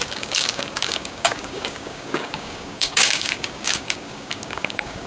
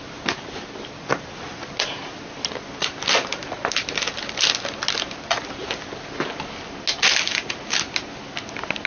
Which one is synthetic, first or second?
first